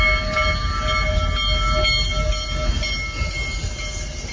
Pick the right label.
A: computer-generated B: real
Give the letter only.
B